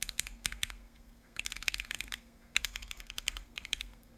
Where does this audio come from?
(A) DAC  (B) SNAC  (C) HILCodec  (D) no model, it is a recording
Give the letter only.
B